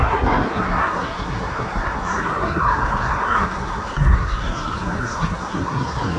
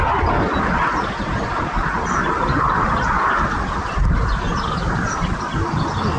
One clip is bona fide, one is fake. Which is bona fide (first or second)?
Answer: second